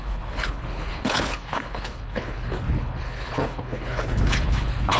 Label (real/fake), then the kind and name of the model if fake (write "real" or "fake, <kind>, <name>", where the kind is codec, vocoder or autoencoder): fake, codec, HILCodec